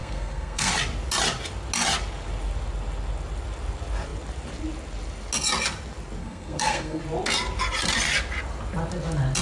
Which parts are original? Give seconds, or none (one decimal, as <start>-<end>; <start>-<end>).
0.7-6.2; 7.0-9.4